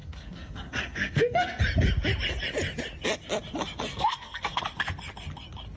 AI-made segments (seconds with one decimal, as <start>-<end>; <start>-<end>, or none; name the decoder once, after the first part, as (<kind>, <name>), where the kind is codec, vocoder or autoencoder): 0.0-1.6 (codec, SNAC); 3.9-4.6